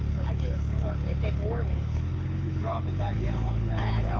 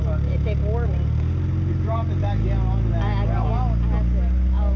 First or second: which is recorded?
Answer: second